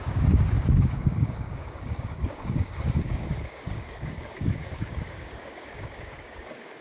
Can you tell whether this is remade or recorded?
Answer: remade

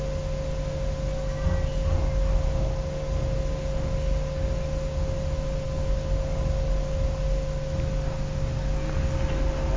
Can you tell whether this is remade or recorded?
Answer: recorded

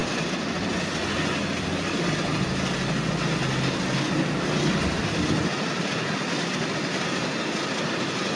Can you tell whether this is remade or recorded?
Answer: recorded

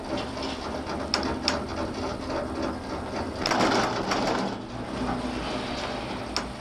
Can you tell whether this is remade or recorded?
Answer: recorded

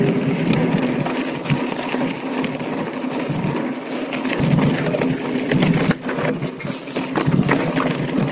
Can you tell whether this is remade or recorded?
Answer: recorded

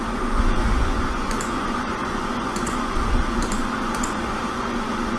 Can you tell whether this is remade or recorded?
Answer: remade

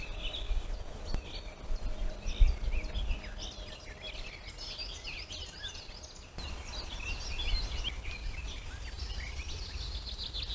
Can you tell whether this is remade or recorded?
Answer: recorded